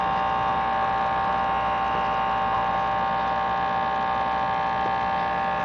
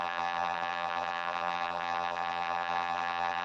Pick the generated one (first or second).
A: second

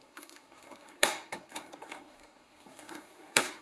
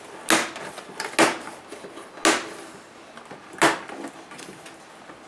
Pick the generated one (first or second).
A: first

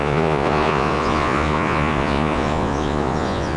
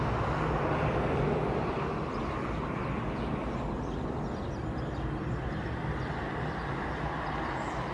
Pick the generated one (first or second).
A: first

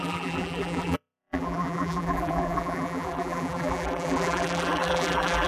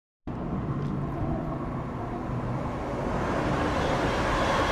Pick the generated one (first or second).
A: first